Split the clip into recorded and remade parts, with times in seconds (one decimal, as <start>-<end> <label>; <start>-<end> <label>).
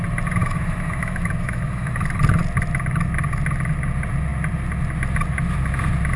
0.0-0.4 recorded; 0.4-1.9 remade; 1.9-6.2 recorded